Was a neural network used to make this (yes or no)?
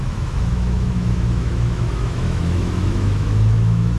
yes